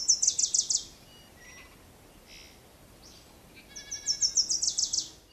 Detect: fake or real real